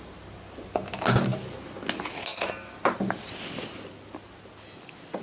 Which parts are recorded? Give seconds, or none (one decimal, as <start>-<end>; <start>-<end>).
0.0-5.2